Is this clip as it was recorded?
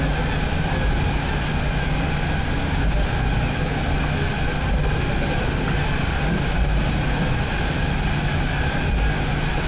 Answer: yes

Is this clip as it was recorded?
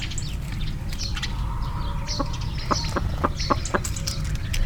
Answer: yes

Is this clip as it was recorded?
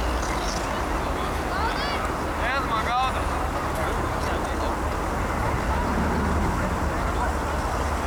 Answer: yes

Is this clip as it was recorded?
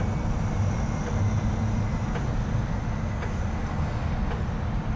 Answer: yes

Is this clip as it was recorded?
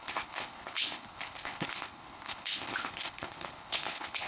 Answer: no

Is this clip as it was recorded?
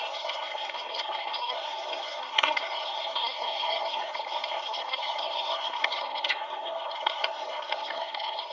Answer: no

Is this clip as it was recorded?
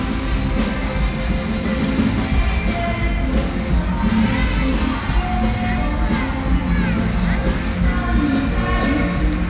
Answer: yes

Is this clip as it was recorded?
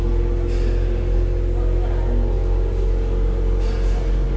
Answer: yes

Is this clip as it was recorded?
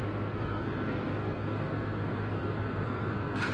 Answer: no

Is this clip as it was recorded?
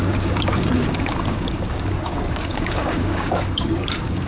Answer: no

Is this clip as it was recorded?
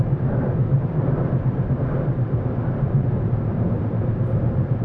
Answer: no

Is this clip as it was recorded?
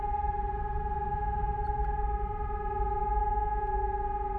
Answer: yes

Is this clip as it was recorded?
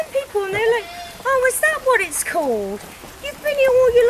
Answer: yes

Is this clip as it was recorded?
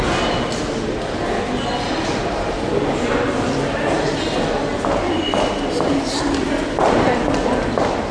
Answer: yes